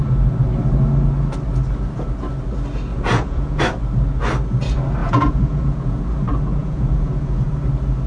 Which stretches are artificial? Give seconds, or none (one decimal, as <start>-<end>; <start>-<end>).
2.9-3.6; 5.0-6.0; 6.6-7.5

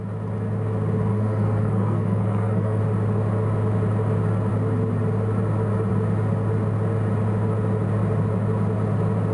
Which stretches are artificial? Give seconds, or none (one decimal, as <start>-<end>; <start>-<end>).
1.1-2.8

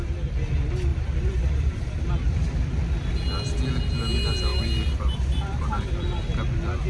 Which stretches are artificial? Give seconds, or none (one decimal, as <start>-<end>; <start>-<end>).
0.9-2.0; 4.5-5.9